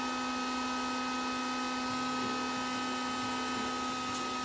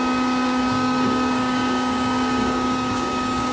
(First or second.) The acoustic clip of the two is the first